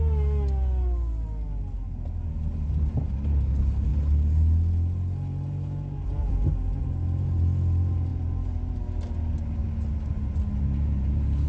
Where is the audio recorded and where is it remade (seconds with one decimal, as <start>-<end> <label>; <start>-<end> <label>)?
0.0-11.5 recorded